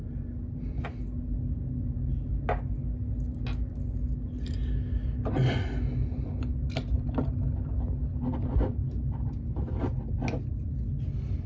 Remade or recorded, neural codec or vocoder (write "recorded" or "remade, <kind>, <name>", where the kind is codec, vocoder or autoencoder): recorded